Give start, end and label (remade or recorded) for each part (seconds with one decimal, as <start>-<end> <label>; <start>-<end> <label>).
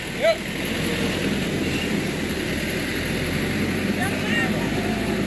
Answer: 0.0-1.2 recorded; 1.2-2.9 remade; 2.9-5.3 recorded